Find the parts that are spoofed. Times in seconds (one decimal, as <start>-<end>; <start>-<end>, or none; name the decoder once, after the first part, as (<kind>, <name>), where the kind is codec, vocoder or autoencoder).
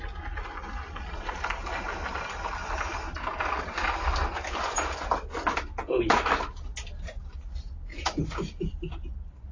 none